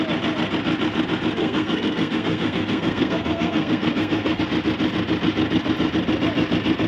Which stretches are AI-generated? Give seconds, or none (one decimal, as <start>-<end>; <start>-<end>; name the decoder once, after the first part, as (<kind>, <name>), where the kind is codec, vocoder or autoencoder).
1.4-4.4 (codec, SNAC)